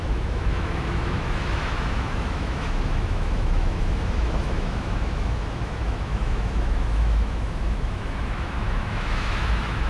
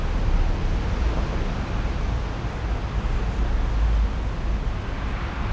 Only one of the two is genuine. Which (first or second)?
second